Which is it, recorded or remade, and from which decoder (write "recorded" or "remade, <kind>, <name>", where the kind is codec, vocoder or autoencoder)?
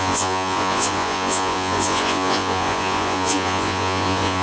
remade, vocoder, Vocos